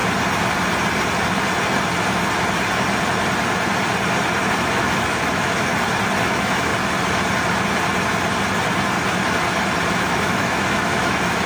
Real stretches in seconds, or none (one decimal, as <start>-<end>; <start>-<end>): 0.0-4.5; 5.7-6.2; 6.7-9.9